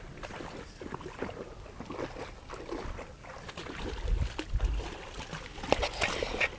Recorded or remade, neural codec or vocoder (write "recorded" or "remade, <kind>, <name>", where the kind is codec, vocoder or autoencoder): recorded